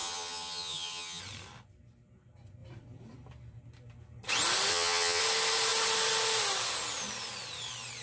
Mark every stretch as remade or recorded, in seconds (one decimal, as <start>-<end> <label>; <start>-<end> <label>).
0.0-1.2 remade; 1.2-4.7 recorded; 4.7-5.2 remade; 5.2-8.0 recorded